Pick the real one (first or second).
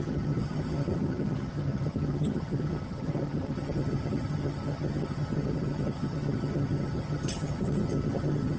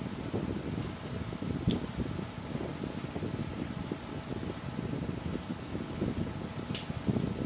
second